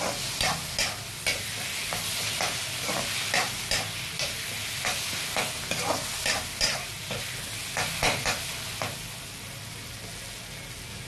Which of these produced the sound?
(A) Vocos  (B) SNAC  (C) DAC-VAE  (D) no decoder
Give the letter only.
D